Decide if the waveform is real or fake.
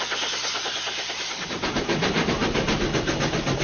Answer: real